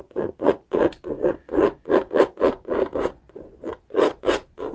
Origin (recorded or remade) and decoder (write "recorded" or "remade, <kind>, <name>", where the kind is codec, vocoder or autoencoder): remade, vocoder, Vocos